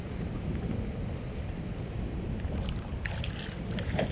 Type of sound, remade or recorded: recorded